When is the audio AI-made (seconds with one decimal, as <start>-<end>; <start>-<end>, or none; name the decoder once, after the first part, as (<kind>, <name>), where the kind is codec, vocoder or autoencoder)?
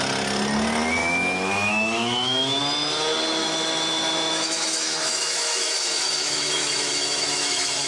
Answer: 1.0-2.6 (autoencoder, DAC-VAE); 3.4-7.9